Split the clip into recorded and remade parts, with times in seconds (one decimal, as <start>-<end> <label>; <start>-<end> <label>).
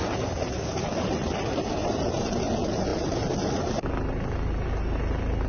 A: 0.0-1.8 recorded; 1.8-2.5 remade; 2.5-5.5 recorded